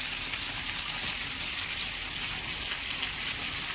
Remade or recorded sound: recorded